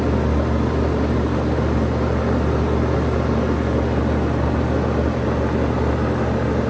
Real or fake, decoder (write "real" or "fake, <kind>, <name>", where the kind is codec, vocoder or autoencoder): real